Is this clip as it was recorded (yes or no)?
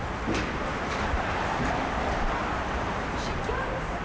no